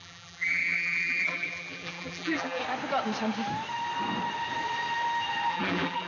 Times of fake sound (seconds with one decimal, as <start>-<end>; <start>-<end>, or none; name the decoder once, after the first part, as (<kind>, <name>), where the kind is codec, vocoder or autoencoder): 0.0-2.6 (vocoder, BigVGAN v2); 5.5-6.1